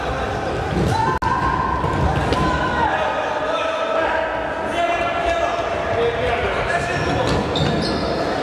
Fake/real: real